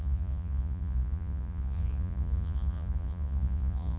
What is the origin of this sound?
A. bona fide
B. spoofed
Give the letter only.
B